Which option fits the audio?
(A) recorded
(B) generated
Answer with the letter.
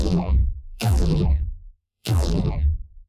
B